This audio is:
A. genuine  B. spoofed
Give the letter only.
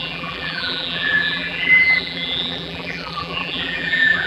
B